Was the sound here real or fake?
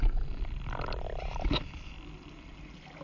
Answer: real